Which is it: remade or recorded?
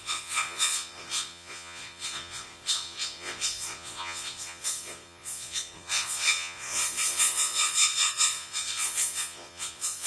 remade